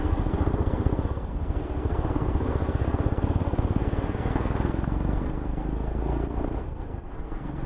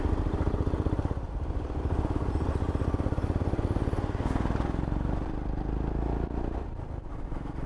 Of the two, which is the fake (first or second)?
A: first